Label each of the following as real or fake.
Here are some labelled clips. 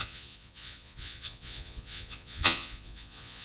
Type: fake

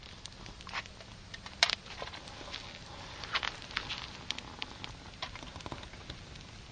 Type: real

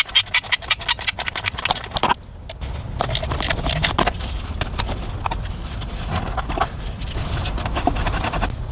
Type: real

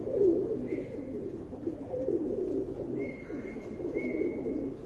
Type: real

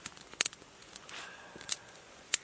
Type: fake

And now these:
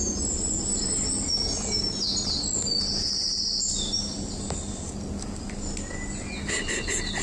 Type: real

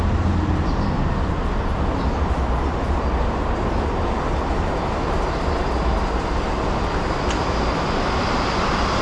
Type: real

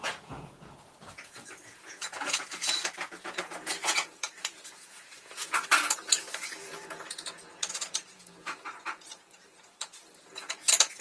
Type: fake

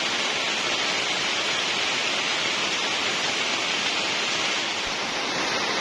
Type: real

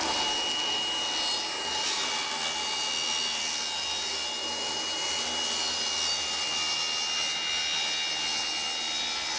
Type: real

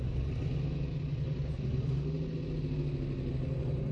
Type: real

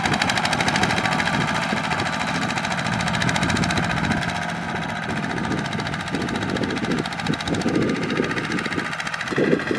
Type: real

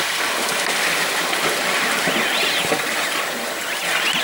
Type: real